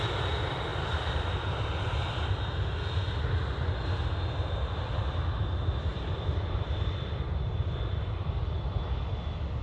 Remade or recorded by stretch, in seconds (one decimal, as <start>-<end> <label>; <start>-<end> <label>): 0.0-0.7 recorded; 0.7-2.3 remade; 2.3-5.9 recorded; 5.9-8.7 remade; 8.7-9.6 recorded